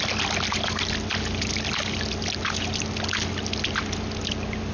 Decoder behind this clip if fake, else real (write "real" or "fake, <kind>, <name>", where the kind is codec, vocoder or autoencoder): real